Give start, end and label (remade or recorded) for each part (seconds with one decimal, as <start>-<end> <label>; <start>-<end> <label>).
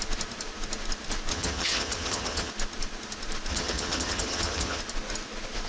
0.0-1.3 recorded; 1.3-2.5 remade; 2.5-3.5 recorded; 3.5-4.8 remade; 4.8-5.7 recorded